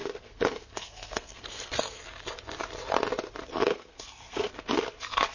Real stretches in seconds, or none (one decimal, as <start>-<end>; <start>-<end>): 2.0-3.7; 4.5-5.3

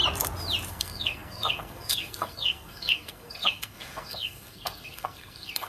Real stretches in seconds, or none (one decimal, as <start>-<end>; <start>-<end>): 0.0-0.7

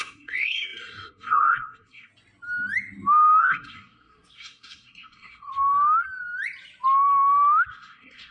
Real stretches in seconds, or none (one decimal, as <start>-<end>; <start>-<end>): 2.1-3.4; 5.5-7.7

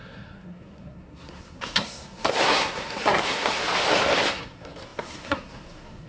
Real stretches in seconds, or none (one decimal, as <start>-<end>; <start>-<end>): 3.6-4.3

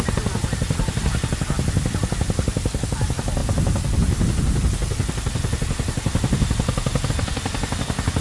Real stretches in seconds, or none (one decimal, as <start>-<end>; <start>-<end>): 0.0-8.2

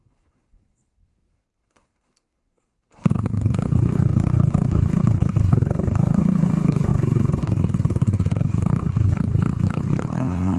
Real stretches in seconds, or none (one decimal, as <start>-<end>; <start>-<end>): none

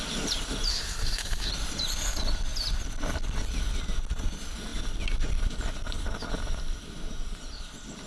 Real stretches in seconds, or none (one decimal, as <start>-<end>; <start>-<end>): 0.0-0.7; 1.5-8.1

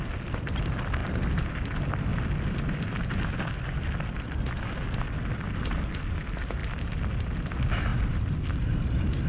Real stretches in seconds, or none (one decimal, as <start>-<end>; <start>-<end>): 0.0-9.3